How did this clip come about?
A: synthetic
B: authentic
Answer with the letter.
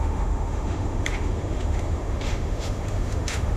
A